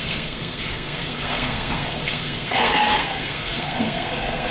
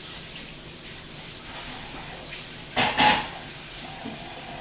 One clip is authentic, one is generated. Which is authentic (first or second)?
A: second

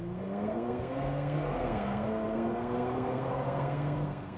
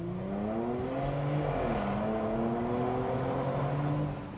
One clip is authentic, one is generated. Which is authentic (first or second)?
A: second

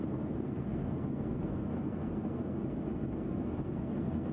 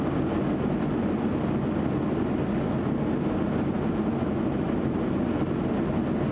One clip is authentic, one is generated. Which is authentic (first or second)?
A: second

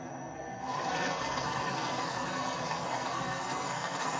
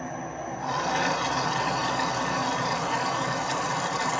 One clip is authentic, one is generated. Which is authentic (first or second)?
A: second